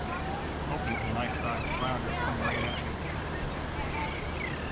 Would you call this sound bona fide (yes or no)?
yes